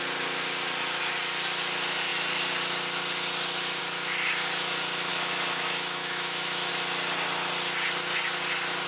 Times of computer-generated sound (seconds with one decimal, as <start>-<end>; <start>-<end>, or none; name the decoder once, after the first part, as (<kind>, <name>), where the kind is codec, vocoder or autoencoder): 5.1-6.7 (autoencoder, DAC-VAE)